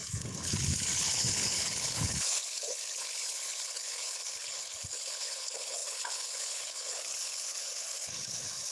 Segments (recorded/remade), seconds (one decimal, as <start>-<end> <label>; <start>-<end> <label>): 0.0-8.7 remade